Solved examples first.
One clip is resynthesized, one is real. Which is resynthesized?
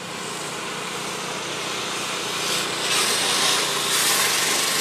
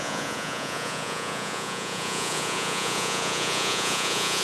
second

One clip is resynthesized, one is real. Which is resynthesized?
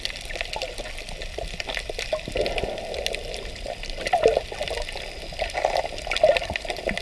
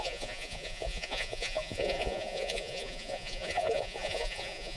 second